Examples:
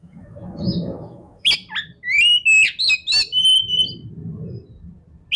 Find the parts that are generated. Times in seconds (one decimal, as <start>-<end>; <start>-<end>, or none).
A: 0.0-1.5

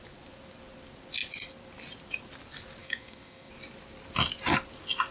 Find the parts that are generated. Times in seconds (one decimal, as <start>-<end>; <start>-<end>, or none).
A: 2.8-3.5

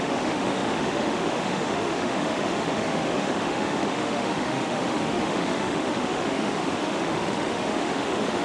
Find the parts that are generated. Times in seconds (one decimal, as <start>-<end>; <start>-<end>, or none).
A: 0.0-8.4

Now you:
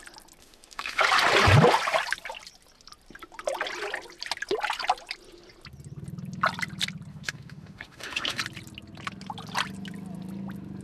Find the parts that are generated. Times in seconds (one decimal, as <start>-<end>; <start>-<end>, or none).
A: 0.4-1.0; 7.1-8.4

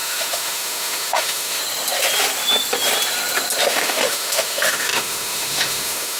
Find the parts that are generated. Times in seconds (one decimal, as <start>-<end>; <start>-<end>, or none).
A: 0.0-1.6; 3.6-6.2

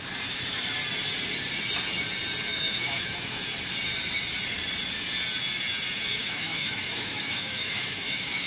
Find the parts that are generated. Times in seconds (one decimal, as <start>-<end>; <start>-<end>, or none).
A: 2.5-3.4; 6.2-8.5

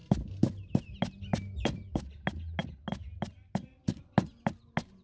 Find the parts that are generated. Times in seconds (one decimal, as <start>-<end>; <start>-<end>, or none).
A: none

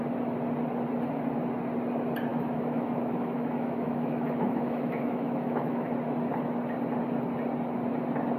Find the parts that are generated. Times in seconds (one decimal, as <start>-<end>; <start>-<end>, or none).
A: 2.3-5.9